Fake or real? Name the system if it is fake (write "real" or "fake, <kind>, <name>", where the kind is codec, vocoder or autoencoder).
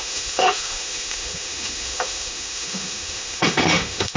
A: fake, autoencoder, DAC-VAE